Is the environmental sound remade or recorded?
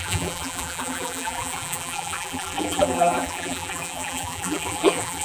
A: remade